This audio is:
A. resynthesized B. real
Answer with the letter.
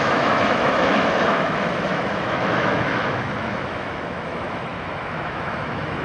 A